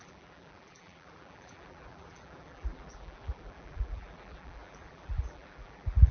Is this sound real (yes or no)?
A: no